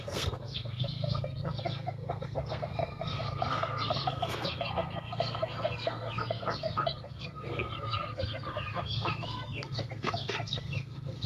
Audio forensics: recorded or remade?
remade